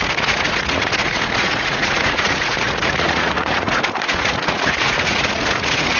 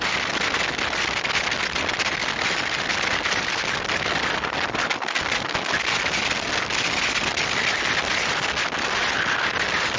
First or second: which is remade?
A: first